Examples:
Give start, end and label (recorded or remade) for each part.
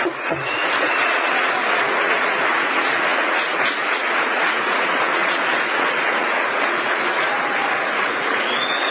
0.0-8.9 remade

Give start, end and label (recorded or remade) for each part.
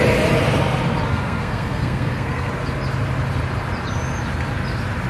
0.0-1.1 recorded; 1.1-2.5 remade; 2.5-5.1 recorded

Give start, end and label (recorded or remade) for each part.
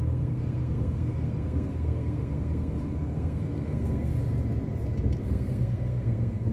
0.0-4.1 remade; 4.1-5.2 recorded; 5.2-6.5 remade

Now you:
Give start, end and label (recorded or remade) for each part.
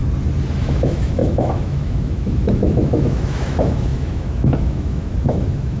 0.0-0.6 recorded; 0.6-5.8 remade